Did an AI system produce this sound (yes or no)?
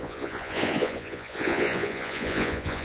yes